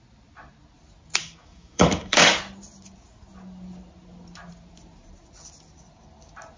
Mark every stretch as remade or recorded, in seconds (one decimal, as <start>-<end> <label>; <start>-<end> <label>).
0.0-1.2 recorded; 1.2-2.4 remade; 2.4-6.6 recorded